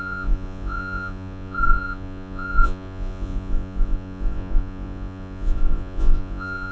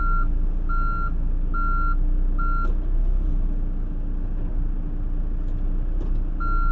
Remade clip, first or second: first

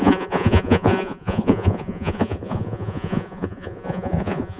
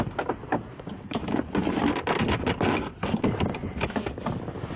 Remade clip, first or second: first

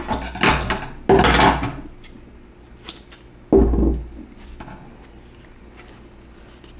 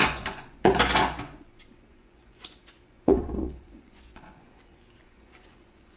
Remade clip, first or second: second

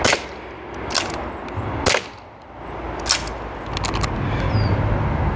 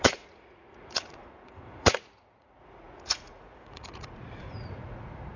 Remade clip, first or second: second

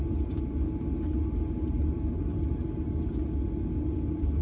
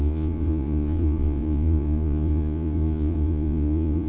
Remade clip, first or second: second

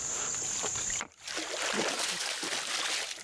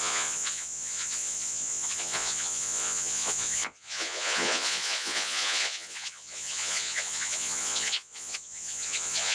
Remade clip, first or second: second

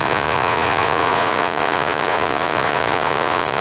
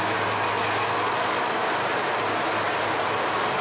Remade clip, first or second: first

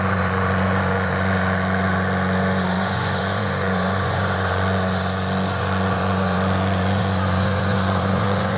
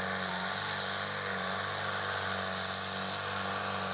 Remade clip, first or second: first